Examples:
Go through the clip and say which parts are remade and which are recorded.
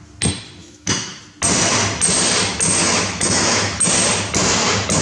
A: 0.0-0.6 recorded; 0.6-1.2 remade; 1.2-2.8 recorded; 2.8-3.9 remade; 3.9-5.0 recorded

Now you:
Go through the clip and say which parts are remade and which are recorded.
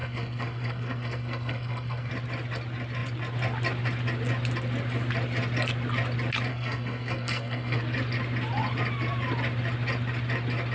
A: 0.0-2.1 remade; 2.1-6.5 recorded; 6.5-7.8 remade; 7.8-10.7 recorded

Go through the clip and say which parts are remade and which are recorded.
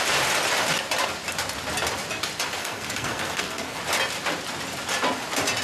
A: 0.0-2.6 recorded; 2.6-3.8 remade; 3.8-5.6 recorded